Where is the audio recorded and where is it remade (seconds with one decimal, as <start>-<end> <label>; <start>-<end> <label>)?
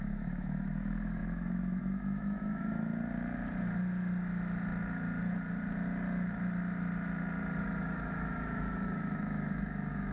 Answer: 0.0-2.9 remade; 2.9-7.6 recorded; 7.6-10.1 remade